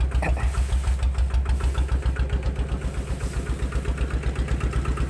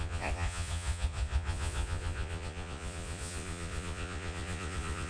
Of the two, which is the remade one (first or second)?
second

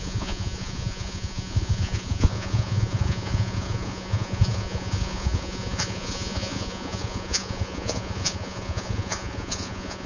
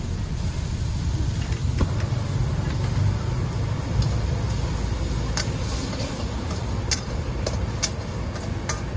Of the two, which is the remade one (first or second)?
first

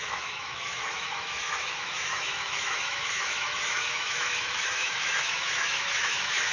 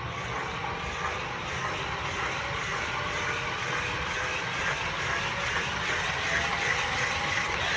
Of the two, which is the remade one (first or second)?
first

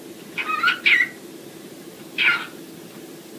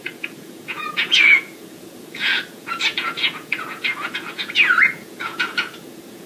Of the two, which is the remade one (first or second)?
second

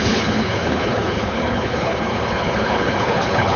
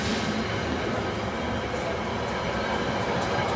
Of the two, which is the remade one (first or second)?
first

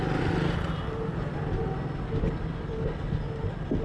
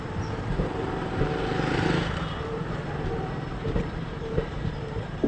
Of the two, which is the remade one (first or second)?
second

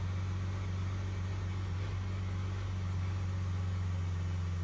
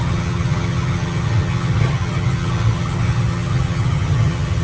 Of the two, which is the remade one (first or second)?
second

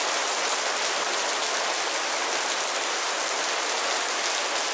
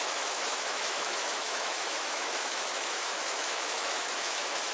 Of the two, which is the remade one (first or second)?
second